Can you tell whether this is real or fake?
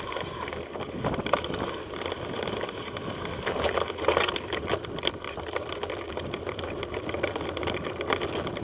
fake